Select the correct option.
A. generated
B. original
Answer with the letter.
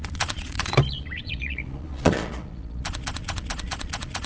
A